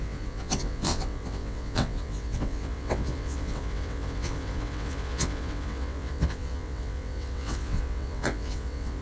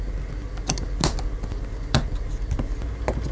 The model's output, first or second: first